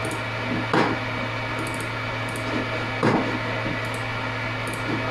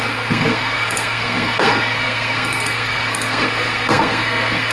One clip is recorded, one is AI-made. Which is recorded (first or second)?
first